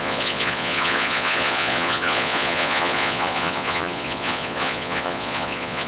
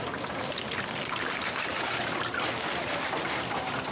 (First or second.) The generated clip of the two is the first